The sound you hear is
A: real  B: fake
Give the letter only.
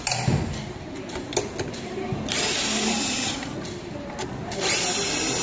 A